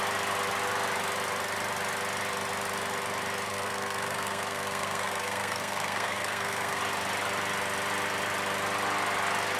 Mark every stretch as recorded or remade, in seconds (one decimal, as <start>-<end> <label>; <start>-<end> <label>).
0.0-3.5 recorded; 3.5-6.8 remade; 6.8-9.6 recorded